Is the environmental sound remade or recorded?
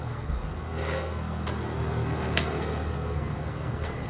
remade